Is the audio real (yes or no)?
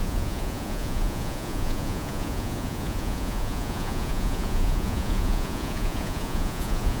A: no